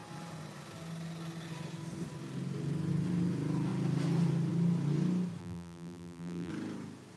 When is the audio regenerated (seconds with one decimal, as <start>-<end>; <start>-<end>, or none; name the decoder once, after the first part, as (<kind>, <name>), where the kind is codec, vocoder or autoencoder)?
5.4-6.5 (vocoder, BigVGAN v2)

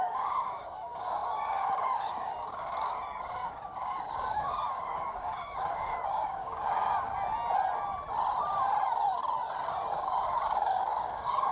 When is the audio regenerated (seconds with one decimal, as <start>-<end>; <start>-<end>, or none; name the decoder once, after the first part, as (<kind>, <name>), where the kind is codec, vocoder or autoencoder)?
0.0-7.1 (codec, DAC); 9.9-11.5